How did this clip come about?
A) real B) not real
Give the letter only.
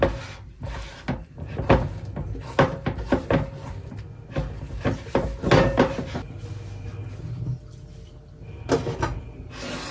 A